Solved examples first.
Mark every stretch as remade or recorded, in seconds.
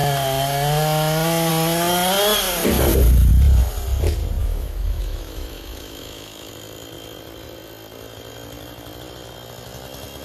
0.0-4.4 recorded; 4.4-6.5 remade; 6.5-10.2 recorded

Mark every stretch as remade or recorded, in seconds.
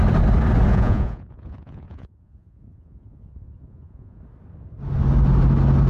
0.0-0.7 recorded; 0.7-4.2 remade; 4.2-5.9 recorded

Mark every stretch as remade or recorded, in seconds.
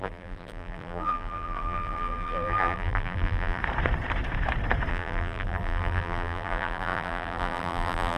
0.0-3.6 remade; 3.6-4.9 recorded; 4.9-8.2 remade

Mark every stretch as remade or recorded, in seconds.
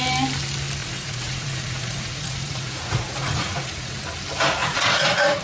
0.0-0.8 recorded; 0.8-4.0 remade; 4.0-4.6 recorded; 4.6-5.4 remade